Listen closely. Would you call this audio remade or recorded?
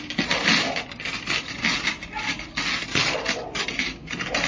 recorded